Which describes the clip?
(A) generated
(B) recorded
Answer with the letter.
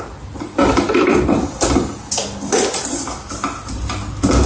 B